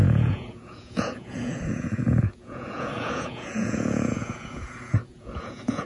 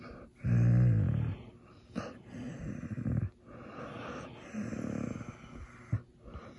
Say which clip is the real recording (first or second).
second